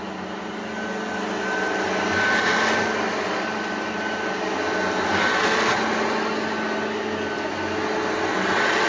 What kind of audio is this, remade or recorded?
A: recorded